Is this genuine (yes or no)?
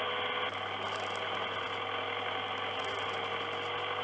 yes